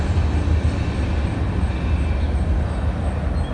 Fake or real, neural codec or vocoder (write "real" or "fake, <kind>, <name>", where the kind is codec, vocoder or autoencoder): real